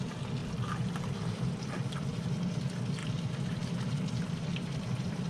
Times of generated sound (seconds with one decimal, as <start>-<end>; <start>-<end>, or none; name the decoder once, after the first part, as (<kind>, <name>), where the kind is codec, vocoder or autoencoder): 0.4-2.2 (vocoder, BigVGAN v2); 3.0-5.3